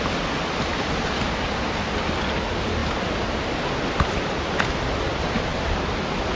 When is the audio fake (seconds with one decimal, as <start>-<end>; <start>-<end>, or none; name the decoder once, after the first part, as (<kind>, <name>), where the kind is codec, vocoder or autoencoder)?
none

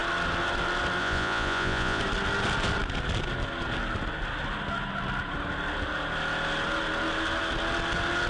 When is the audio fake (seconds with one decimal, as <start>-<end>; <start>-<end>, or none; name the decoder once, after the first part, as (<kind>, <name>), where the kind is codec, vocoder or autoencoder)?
1.0-2.0 (vocoder, Vocos)